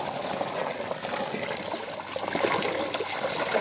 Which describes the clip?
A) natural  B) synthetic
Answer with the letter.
A